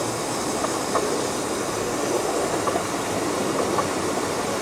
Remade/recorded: recorded